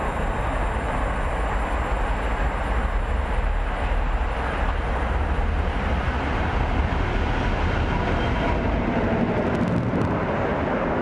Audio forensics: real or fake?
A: real